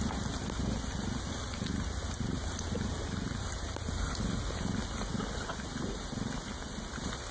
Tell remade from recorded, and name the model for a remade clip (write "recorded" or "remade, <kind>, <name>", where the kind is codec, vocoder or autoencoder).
recorded